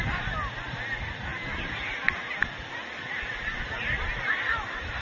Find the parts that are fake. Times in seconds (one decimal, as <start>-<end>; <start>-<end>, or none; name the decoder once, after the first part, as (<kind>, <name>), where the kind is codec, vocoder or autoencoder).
none